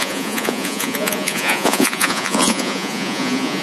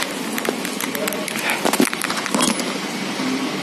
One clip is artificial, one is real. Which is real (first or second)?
second